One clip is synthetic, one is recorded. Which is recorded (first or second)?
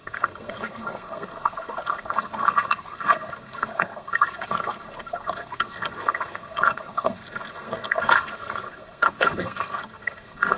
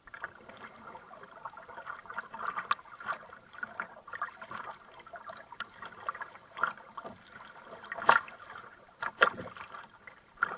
second